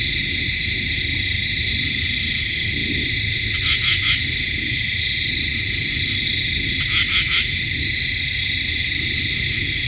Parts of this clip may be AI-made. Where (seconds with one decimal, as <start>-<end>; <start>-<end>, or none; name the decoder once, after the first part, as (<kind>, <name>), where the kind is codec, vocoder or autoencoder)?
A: none